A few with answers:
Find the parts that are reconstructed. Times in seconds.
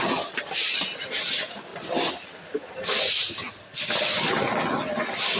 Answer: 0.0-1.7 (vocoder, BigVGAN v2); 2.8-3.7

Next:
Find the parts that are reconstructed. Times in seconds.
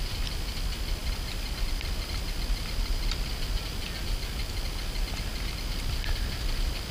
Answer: none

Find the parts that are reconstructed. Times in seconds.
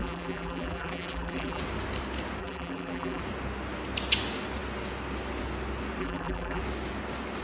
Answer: 0.0-1.6 (vocoder, BigVGAN v2); 2.4-3.2; 6.0-6.6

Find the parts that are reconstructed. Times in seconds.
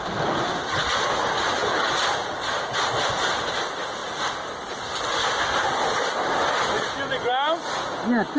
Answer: 5.6-7.3 (vocoder, BigVGAN v2)